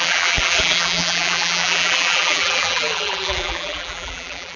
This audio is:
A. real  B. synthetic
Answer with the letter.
B